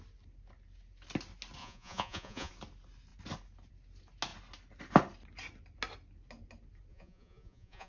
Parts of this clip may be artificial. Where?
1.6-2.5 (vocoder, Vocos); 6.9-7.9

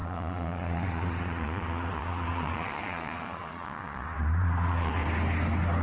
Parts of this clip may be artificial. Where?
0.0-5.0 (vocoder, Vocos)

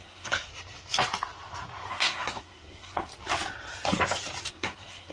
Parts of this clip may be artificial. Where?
0.0-0.5 (codec, SNAC); 1.9-3.1; 4.5-5.1

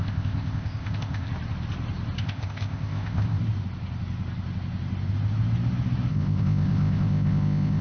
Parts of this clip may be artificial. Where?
0.0-1.3 (codec, ZipCodec); 2.2-3.4; 6.1-7.8

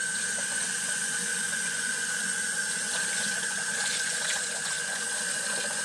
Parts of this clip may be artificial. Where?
0.0-5.8 (vocoder, Vocos)